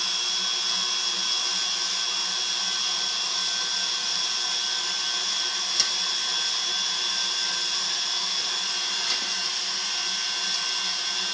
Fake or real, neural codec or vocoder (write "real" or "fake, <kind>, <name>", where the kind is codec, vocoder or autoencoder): real